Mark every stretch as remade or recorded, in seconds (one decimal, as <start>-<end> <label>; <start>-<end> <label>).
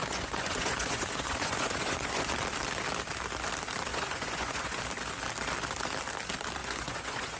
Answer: 0.0-2.3 remade; 2.3-3.9 recorded; 3.9-4.8 remade; 4.8-6.6 recorded; 6.6-7.4 remade